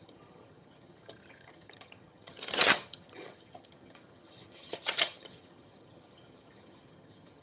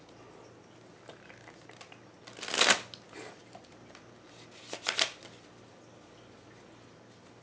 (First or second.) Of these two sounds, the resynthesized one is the first